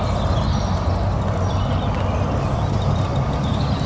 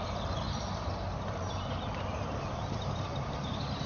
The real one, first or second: first